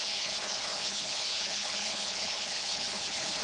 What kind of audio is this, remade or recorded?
remade